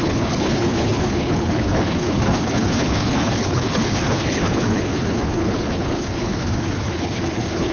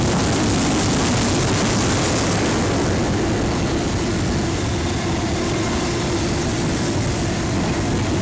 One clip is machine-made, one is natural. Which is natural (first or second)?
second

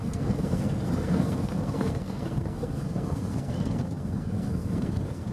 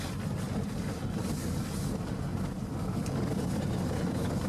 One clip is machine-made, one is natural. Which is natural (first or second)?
second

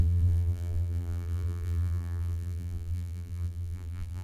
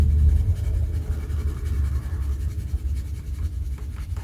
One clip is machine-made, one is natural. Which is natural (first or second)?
second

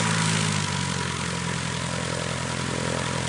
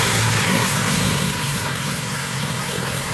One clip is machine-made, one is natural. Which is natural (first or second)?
first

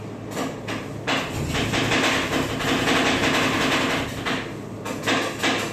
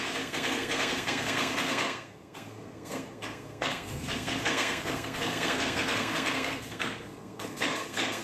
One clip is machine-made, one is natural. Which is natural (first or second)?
first